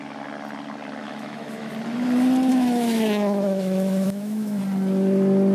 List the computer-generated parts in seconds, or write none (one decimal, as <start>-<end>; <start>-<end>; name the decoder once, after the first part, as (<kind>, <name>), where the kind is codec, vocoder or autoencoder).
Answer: 1.0-1.7 (autoencoder, DAC-VAE); 2.5-4.6